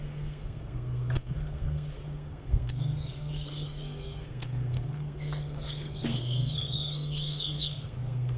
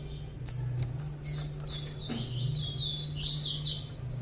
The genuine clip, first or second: second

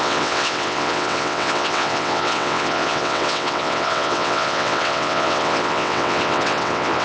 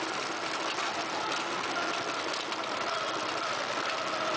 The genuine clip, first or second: second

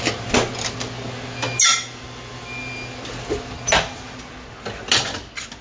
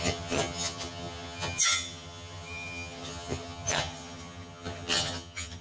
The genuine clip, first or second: first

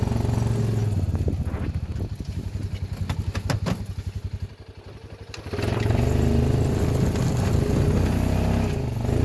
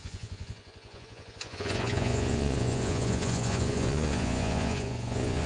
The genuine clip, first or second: first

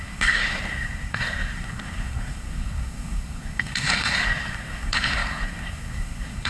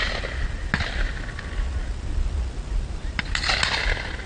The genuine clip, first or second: second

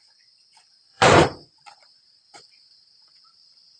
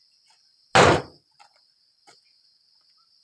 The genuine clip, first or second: second